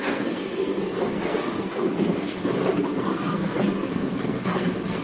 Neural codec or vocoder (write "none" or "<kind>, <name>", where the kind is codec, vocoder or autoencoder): codec, SNAC